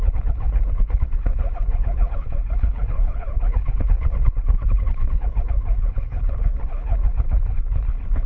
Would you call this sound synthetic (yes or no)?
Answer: yes